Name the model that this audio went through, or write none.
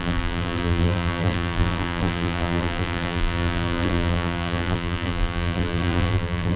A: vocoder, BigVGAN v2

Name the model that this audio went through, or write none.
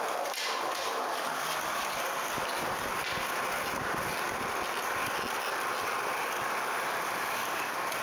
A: none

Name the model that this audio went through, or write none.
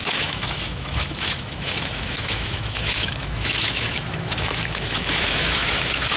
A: autoencoder, DAC-VAE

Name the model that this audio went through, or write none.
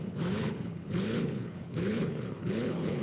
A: codec, HILCodec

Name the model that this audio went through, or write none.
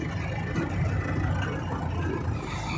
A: none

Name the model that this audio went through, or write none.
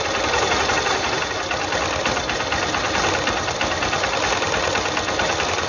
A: none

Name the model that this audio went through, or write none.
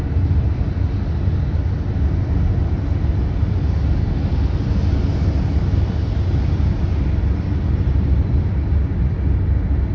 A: none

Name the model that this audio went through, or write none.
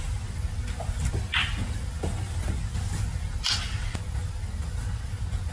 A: none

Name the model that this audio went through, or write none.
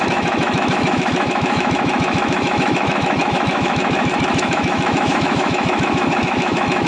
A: autoencoder, DAC-VAE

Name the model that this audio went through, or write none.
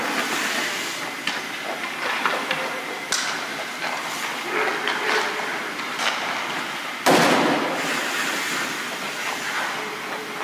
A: none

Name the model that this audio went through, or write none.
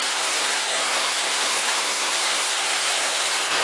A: codec, SNAC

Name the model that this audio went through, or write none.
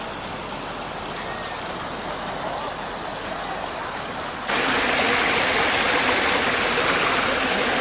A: none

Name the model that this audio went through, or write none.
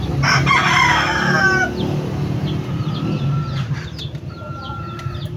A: none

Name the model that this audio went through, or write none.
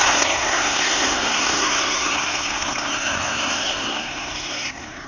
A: codec, SNAC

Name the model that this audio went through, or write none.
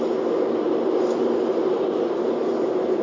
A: none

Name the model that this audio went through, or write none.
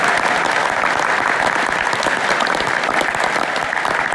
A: none